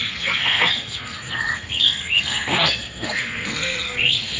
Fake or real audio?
fake